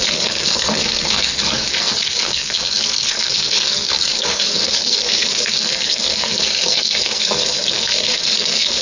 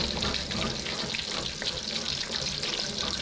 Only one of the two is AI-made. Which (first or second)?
first